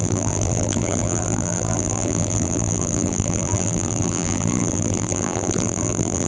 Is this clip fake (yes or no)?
yes